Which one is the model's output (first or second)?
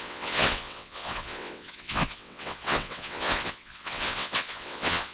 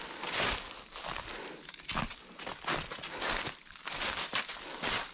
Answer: first